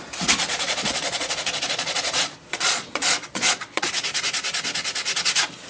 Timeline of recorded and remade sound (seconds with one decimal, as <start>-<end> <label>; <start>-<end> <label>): 0.0-0.5 recorded; 0.5-3.9 remade; 3.9-5.7 recorded